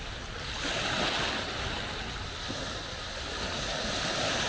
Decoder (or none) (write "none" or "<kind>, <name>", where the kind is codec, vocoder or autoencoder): none